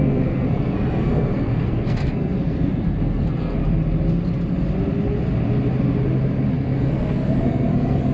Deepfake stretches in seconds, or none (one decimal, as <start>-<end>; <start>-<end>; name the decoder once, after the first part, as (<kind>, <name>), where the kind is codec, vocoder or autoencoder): 0.0-3.6 (codec, SNAC); 6.5-8.1